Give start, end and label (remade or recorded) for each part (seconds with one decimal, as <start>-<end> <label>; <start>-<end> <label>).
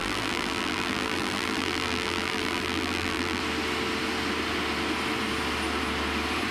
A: 0.0-3.4 remade; 3.4-6.5 recorded